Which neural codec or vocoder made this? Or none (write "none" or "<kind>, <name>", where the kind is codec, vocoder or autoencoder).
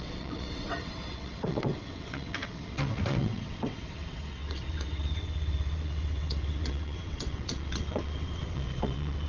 vocoder, WaveNeXt